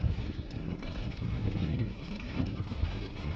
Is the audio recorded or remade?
remade